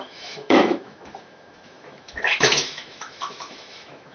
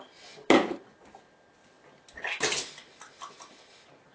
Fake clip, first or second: first